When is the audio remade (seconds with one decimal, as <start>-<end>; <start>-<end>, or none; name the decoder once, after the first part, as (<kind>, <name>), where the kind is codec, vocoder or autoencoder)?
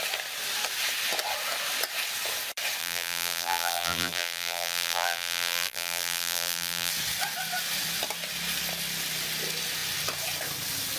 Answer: 2.8-6.9 (vocoder, BigVGAN v2)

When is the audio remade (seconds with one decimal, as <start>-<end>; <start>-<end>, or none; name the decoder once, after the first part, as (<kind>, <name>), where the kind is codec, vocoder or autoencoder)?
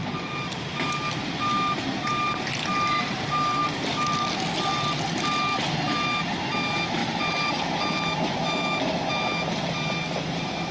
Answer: 0.0-0.7 (vocoder, BigVGAN v2); 7.0-7.5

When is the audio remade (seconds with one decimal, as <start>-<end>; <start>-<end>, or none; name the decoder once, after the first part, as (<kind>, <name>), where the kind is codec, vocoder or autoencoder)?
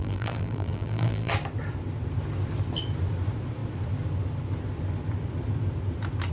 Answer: 0.0-1.3 (vocoder, BigVGAN v2)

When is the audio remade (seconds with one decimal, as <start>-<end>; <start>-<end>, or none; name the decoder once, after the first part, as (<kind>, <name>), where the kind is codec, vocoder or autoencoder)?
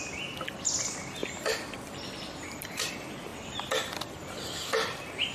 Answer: 1.2-2.9 (vocoder, BigVGAN v2)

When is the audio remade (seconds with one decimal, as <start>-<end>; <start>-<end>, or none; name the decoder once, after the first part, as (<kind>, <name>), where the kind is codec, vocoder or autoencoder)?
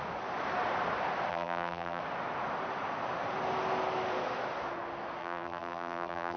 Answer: 1.3-2.0 (vocoder, BigVGAN v2); 5.2-6.4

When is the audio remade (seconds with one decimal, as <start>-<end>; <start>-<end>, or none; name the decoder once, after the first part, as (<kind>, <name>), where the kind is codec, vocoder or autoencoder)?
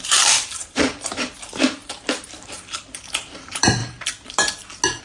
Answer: 0.0-1.8 (vocoder, BigVGAN v2); 2.3-3.8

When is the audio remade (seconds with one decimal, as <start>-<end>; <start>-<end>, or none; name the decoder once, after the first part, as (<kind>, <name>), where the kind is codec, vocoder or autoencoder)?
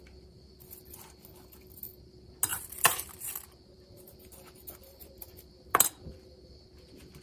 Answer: 2.5-3.3 (vocoder, BigVGAN v2); 4.9-5.5